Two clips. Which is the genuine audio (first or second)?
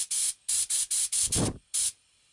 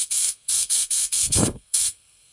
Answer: first